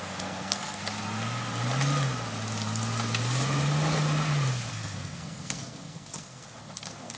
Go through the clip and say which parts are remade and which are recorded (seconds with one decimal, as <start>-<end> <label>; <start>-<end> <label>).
0.0-0.8 remade; 0.8-4.7 recorded; 4.7-7.2 remade